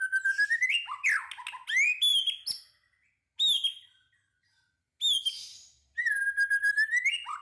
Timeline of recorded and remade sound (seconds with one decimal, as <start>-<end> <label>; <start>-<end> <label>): 0.0-7.4 recorded